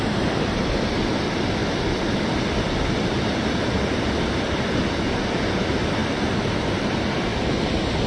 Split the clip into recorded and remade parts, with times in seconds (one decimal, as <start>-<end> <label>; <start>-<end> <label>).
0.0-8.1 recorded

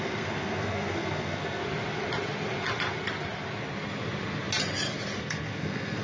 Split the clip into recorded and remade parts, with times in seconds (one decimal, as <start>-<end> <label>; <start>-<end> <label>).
0.0-1.6 remade; 1.6-5.2 recorded; 5.2-6.0 remade

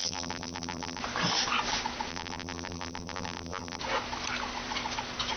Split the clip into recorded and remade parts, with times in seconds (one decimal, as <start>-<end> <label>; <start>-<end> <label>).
0.0-1.0 remade; 1.0-2.1 recorded; 2.1-3.8 remade; 3.8-5.4 recorded

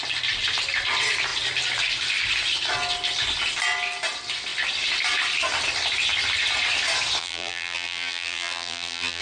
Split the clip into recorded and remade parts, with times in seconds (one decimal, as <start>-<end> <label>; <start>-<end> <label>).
0.0-7.2 recorded; 7.2-9.2 remade